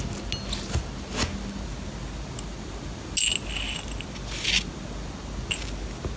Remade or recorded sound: recorded